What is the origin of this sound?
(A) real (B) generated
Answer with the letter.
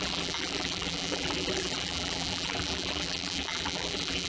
B